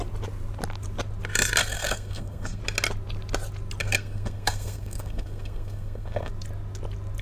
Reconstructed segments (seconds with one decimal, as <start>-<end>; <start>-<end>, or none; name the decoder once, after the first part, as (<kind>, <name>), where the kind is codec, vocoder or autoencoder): 1.6-2.6 (codec, SNAC); 3.8-6.3